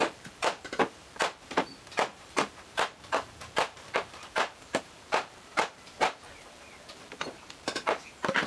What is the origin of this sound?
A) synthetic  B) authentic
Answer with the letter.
A